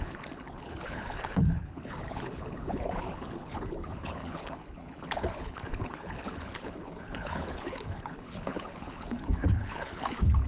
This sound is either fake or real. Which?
fake